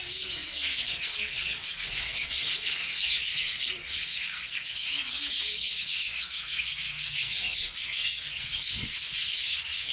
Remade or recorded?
remade